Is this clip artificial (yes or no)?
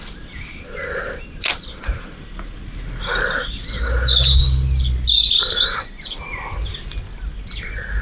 no